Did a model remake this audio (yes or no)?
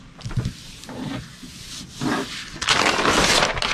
no